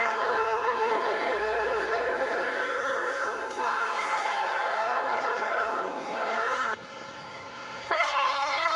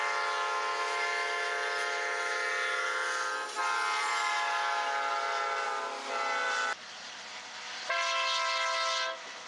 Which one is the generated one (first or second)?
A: first